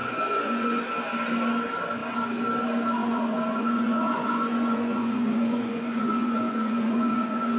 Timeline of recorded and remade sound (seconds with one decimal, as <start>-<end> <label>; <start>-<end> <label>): 0.0-0.8 remade; 0.8-3.0 recorded; 3.0-7.6 remade